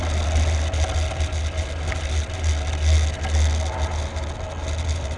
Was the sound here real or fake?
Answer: real